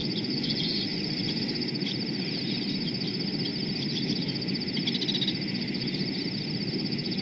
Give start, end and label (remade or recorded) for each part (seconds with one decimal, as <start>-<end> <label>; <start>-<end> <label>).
0.0-1.4 remade; 1.4-7.2 recorded